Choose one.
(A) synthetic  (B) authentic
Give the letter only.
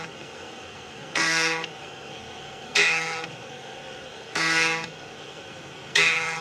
A